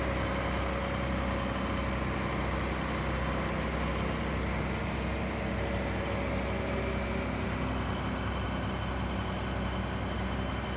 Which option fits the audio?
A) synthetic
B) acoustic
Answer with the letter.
B